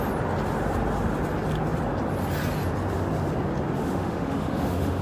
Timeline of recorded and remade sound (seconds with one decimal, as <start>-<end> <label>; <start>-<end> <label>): 0.0-3.8 recorded; 3.8-5.0 remade